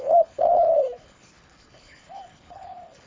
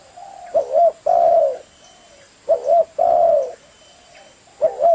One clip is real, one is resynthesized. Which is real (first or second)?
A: second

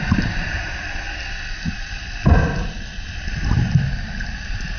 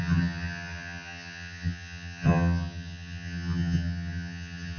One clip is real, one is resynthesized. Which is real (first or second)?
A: first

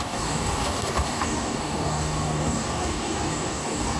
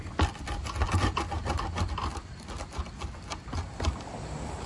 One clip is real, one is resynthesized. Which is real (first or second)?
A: second